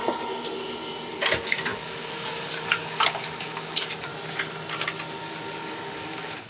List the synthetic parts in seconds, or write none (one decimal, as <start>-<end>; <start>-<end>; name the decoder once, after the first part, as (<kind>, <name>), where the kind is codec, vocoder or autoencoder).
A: 1.1-4.1 (codec, DAC); 5.2-6.5